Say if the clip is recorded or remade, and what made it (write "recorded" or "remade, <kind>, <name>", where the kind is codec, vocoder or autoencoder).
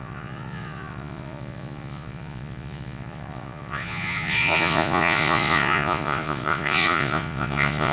remade, vocoder, Vocos